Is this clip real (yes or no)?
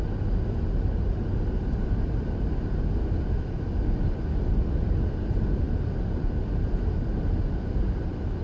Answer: yes